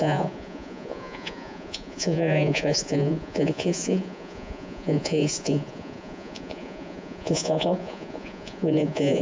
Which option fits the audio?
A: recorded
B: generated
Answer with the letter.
B